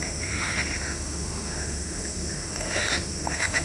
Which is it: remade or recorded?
remade